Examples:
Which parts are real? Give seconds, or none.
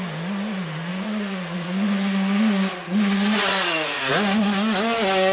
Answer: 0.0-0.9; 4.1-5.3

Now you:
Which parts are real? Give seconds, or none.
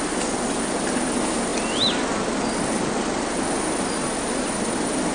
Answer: 0.0-5.1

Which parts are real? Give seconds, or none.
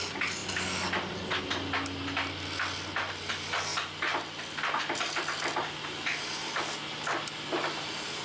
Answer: 0.0-8.2